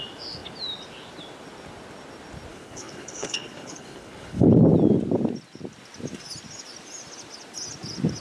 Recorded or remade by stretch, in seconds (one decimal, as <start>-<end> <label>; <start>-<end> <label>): 0.0-2.5 recorded; 2.5-4.5 remade; 4.5-8.2 recorded